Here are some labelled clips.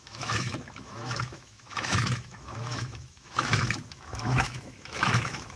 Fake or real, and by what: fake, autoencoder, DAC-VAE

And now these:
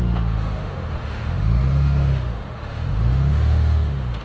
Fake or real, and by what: fake, autoencoder, DAC-VAE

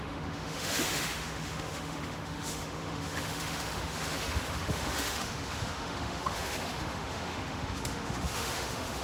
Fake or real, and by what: fake, autoencoder, DAC-VAE